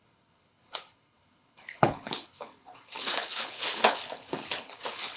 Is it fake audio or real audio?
fake